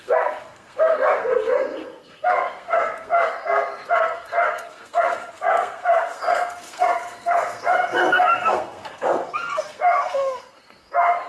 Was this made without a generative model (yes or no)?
no